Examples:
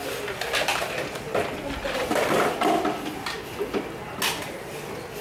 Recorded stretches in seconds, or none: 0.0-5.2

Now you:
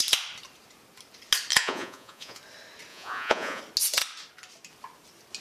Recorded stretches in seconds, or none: 0.0-1.6; 2.4-2.9; 3.6-5.4

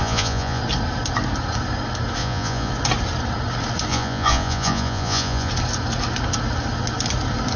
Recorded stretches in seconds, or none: 0.6-2.2; 2.7-3.9; 5.5-7.6

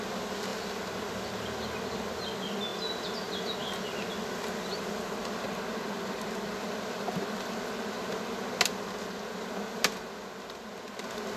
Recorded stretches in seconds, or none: 0.0-0.5; 1.1-4.7; 8.3-11.4

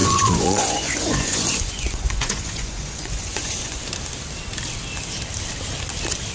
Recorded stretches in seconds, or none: 3.8-6.3

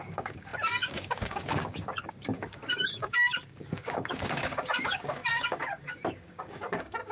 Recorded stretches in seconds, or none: none

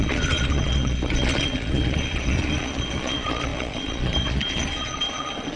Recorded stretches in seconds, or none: none